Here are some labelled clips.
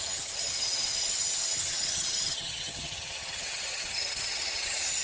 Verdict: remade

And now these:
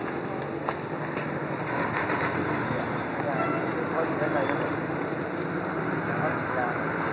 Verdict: recorded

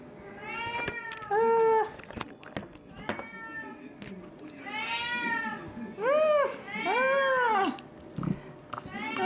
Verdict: recorded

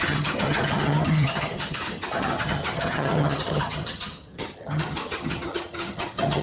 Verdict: remade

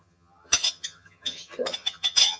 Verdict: remade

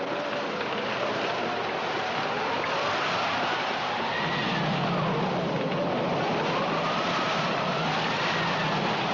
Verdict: recorded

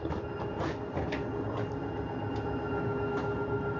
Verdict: recorded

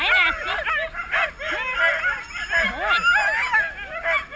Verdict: recorded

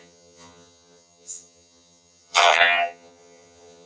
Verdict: remade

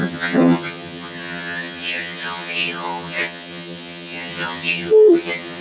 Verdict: remade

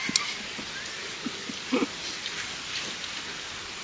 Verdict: recorded